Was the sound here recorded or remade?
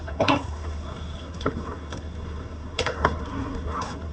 remade